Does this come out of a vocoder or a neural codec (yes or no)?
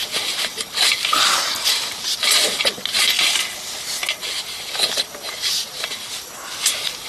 no